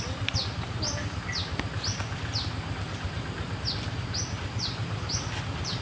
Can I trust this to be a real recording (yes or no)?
yes